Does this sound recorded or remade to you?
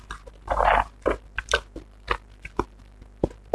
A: remade